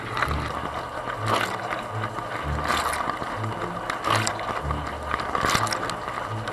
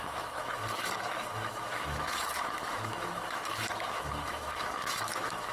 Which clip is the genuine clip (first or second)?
first